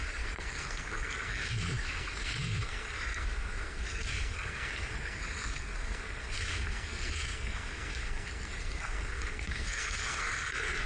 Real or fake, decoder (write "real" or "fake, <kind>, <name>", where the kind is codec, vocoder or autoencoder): fake, codec, SNAC